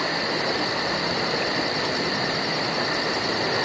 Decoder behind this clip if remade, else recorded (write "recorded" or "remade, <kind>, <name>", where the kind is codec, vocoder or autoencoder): recorded